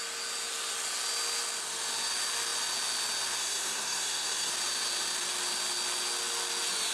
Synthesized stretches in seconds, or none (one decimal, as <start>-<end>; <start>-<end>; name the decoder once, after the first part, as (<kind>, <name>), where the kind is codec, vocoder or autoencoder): 3.4-4.5 (codec, SNAC)